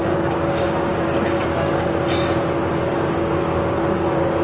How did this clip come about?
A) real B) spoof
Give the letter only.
B